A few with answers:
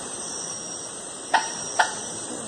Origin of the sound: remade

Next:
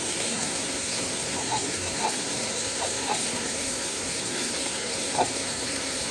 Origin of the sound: remade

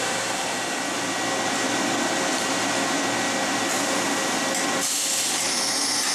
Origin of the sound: recorded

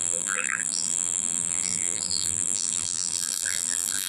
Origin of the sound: remade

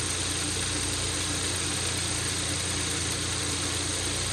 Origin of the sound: recorded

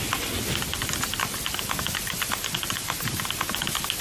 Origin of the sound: recorded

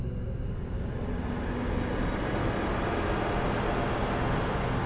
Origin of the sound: recorded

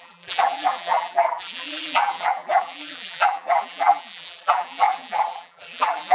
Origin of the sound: remade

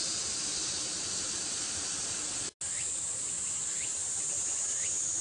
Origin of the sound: recorded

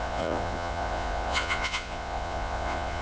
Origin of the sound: remade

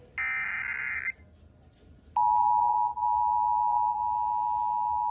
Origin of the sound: recorded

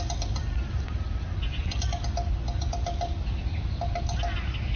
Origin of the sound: recorded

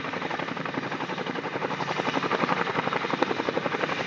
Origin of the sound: recorded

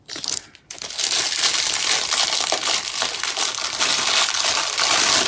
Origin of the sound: recorded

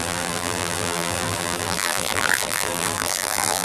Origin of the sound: remade